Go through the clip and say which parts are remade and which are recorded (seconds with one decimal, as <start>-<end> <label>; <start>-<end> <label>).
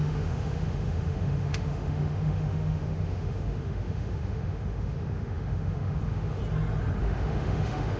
0.0-6.4 remade; 6.4-7.0 recorded; 7.0-8.0 remade